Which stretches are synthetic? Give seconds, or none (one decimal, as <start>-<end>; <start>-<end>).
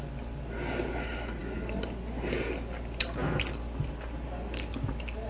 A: none